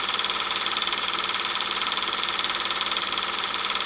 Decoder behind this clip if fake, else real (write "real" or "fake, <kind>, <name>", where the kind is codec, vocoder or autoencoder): real